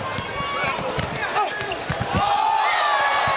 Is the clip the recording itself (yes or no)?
yes